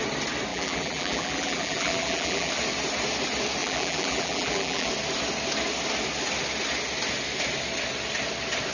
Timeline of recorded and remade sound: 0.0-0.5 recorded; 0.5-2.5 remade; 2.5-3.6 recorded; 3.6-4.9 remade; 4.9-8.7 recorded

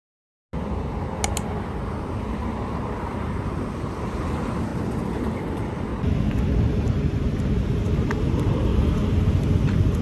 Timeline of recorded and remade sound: 0.0-3.0 recorded; 3.0-4.7 remade; 4.7-5.5 recorded; 5.5-5.9 remade; 5.9-6.7 recorded; 6.7-8.7 remade; 8.7-9.3 recorded; 9.3-10.0 remade